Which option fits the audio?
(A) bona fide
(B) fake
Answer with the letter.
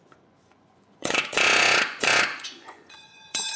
B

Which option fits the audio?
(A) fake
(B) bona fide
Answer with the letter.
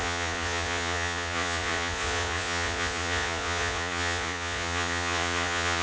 A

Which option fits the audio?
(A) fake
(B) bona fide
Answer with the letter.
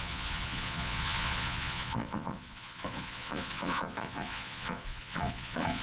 A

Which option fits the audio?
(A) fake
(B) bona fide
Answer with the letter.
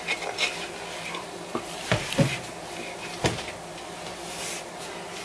B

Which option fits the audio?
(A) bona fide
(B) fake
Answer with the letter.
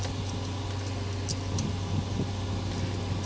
A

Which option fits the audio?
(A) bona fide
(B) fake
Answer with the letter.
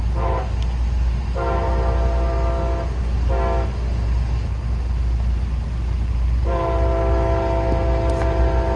A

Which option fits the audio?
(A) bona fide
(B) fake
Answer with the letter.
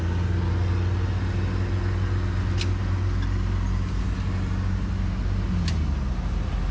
A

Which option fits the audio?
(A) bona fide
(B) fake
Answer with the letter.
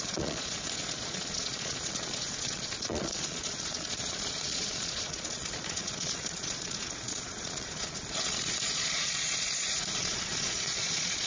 B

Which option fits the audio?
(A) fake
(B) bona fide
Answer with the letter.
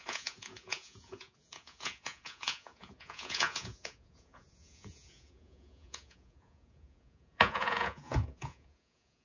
A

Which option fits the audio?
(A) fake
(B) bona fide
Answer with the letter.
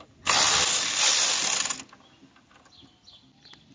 B